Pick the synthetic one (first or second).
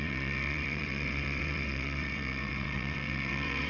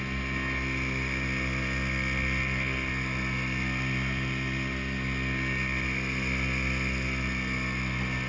first